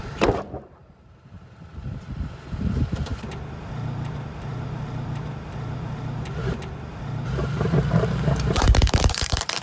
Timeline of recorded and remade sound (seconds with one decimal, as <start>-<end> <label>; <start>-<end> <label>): 0.0-0.8 remade; 0.8-2.6 recorded; 2.6-9.6 remade